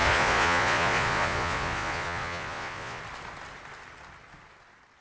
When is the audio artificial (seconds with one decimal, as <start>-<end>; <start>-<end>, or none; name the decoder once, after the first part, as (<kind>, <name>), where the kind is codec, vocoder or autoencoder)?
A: 0.0-3.0 (vocoder, Vocos)